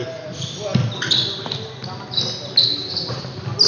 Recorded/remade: recorded